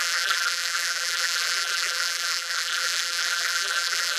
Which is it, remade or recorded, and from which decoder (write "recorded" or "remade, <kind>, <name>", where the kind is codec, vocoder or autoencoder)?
remade, vocoder, BigVGAN v2